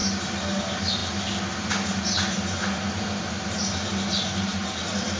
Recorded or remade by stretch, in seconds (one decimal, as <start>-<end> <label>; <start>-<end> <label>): 0.0-5.2 recorded